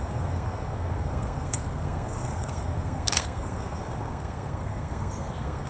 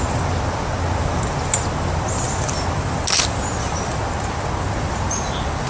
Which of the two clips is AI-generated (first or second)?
first